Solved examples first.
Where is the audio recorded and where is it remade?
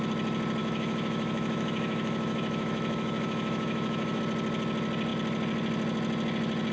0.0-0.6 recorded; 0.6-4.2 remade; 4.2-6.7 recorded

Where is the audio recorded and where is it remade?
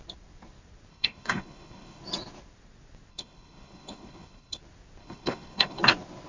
0.0-0.9 recorded; 0.9-2.0 remade; 2.0-3.1 recorded; 3.1-4.6 remade; 4.6-5.0 recorded; 5.0-5.8 remade; 5.8-6.3 recorded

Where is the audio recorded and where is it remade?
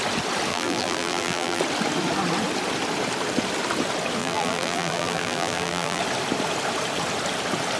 0.0-0.5 recorded; 0.5-1.6 remade; 1.6-4.2 recorded; 4.2-6.0 remade; 6.0-7.8 recorded